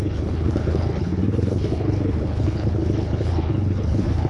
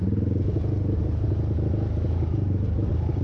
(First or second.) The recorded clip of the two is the second